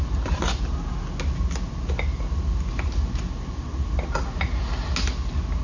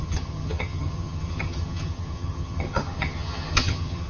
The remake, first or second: second